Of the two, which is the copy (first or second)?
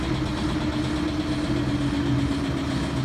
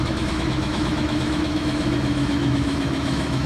second